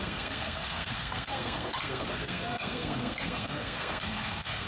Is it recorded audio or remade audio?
remade